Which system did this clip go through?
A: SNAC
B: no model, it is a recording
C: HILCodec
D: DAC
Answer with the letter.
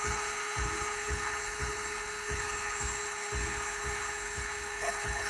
C